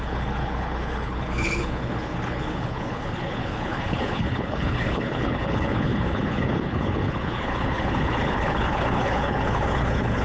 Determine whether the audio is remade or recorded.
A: remade